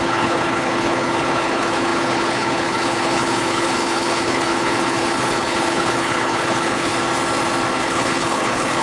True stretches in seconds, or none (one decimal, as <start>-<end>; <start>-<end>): 6.9-7.7